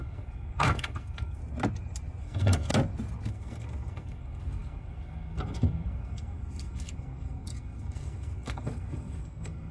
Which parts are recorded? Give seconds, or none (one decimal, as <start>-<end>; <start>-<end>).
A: 1.4-2.2; 2.7-3.3